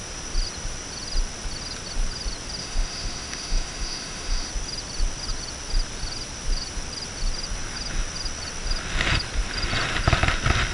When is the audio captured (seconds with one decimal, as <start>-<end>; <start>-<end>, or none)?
0.0-2.6; 4.5-10.7